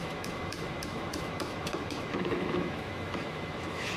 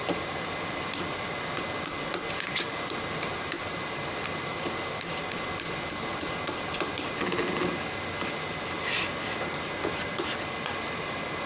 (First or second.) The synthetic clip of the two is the first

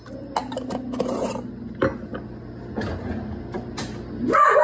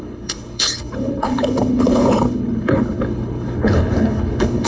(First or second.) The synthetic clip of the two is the second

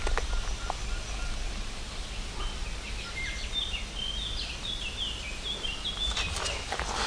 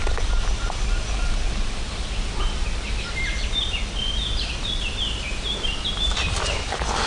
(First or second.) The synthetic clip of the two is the second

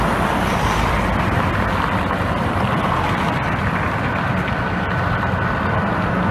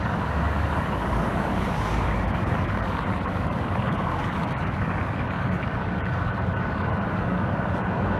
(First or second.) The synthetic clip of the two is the second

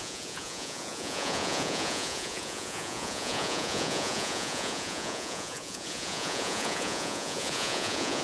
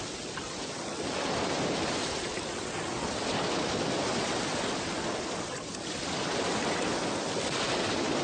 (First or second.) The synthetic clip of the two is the first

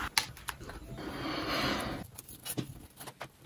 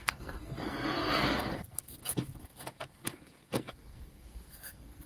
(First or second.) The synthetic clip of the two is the second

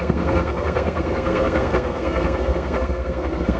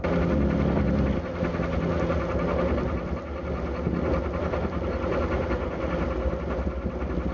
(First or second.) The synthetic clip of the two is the first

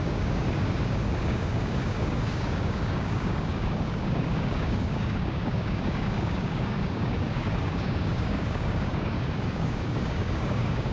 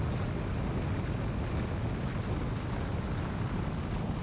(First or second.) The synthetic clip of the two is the first